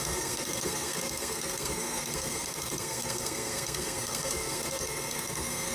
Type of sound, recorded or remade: remade